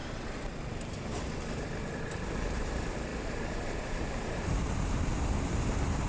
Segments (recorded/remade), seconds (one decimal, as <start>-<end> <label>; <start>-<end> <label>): 0.0-1.9 recorded; 1.9-6.1 remade